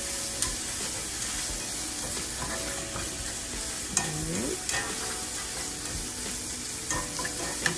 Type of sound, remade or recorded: recorded